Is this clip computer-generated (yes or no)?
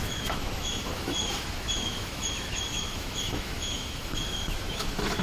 yes